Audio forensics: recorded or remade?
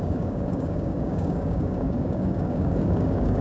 remade